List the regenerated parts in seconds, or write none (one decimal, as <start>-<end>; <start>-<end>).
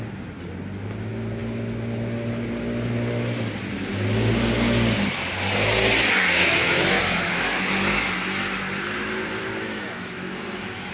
6.4-8.6; 9.7-10.9